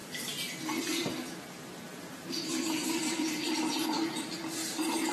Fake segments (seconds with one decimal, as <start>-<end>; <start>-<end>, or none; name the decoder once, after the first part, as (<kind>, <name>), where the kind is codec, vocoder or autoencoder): 1.9-4.0 (vocoder, BigVGAN v2); 4.6-5.1